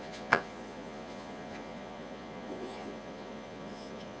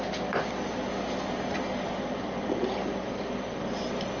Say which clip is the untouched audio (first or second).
second